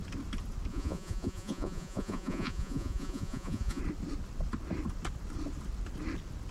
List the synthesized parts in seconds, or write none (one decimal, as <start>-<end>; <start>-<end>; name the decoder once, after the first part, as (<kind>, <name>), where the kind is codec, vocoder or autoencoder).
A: 0.7-3.8 (vocoder, Vocos)